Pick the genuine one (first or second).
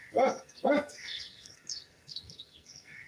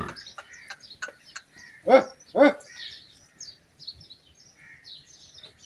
second